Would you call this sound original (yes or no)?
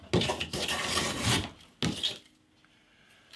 yes